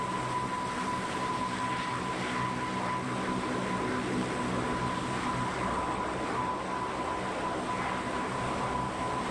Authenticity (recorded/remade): recorded